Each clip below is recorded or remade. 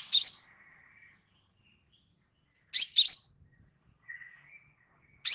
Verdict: recorded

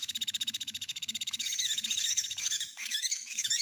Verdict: remade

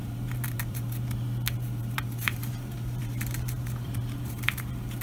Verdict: remade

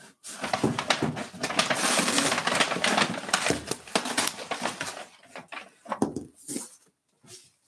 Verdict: recorded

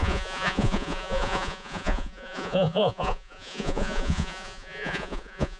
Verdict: remade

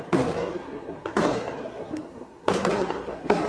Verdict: remade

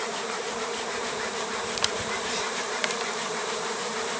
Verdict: remade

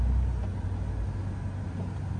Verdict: recorded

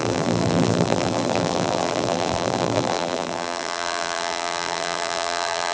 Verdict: remade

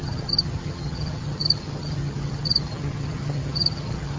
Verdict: remade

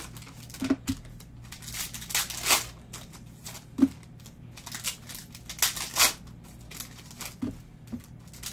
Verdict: recorded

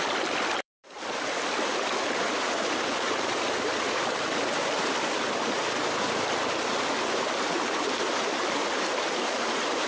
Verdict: remade